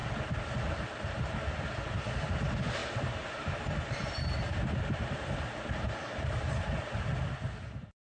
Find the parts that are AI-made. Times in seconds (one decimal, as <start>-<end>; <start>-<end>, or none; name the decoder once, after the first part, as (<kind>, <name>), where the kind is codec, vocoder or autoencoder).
2.8-6.6 (vocoder, BigVGAN v2)